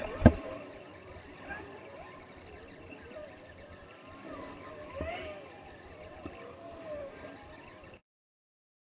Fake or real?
real